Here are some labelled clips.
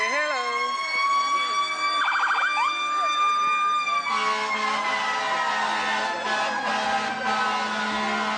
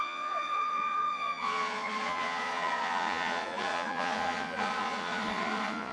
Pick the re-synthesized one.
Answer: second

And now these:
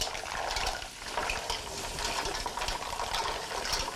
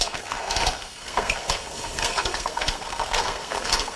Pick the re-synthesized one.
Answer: second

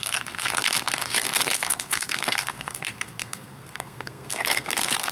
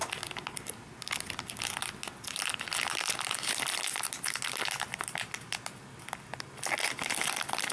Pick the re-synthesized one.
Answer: first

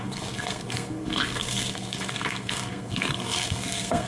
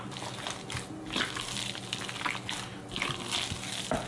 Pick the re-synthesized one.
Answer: first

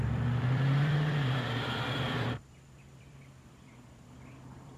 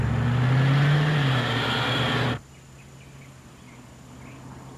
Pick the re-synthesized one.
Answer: first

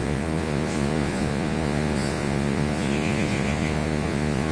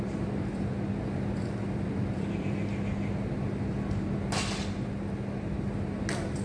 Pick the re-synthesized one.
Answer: first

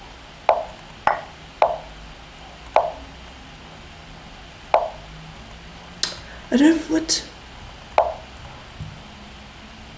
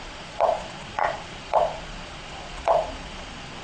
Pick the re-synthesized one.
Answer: second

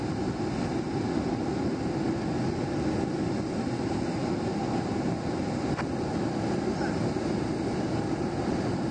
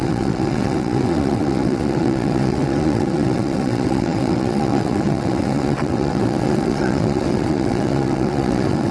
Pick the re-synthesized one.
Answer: second